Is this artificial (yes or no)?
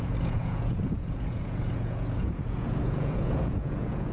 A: yes